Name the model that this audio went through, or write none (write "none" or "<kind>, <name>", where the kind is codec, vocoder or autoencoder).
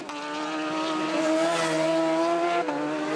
none